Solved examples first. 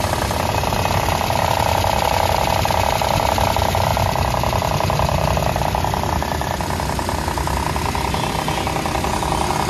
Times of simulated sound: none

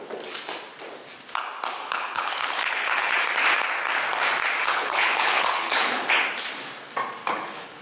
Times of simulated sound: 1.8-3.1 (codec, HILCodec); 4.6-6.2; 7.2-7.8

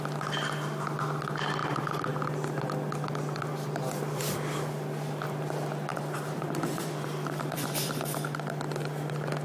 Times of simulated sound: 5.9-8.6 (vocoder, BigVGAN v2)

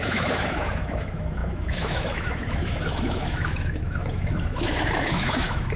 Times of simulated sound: 0.0-5.8 (autoencoder, DAC-VAE)